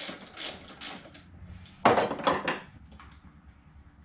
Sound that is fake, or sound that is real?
real